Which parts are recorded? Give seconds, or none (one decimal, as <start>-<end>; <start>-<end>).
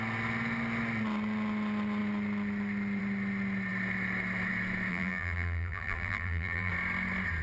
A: 0.0-4.9; 6.7-7.4